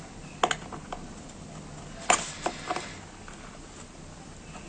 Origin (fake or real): real